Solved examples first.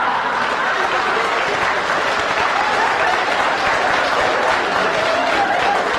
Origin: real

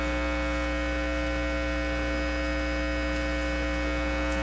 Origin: real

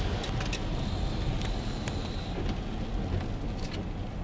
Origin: real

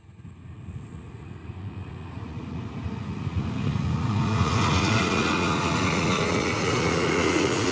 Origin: fake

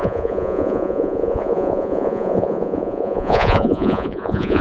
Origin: fake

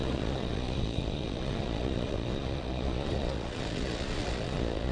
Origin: fake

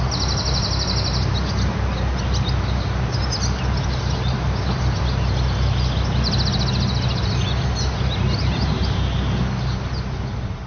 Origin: real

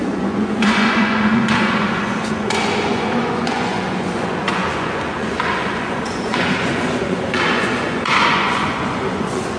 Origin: fake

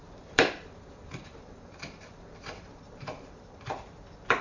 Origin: fake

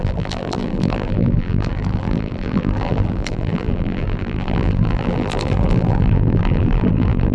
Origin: fake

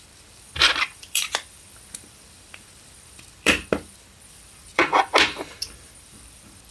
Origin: fake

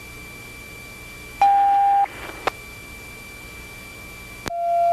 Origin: real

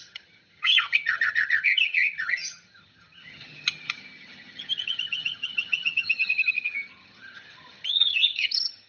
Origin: fake